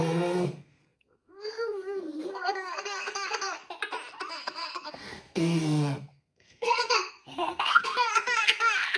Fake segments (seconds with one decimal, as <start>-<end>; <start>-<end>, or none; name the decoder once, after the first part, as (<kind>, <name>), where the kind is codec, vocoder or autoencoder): 0.0-3.6 (codec, SNAC); 4.3-9.0